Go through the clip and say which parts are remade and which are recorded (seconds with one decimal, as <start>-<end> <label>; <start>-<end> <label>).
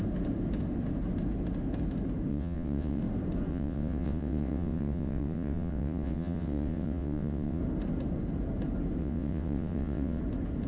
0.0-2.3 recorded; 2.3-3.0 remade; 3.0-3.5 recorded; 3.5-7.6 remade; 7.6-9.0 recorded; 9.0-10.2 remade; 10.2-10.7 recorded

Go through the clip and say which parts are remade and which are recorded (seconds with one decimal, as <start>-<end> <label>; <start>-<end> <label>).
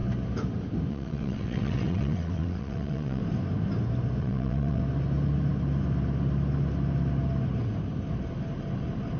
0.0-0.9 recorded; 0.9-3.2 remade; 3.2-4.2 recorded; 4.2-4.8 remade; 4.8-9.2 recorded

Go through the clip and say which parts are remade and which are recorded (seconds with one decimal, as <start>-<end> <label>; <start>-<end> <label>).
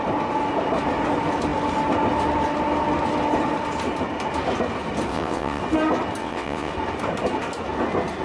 0.0-5.1 recorded; 5.1-5.6 remade; 5.6-6.2 recorded; 6.2-6.7 remade; 6.7-8.2 recorded